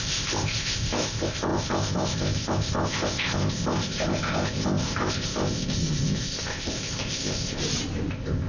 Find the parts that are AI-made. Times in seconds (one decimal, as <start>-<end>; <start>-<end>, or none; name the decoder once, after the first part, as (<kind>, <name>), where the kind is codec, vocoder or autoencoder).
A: 0.0-7.6 (codec, ZipCodec); 8.1-8.5